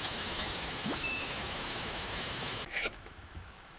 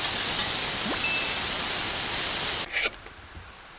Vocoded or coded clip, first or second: first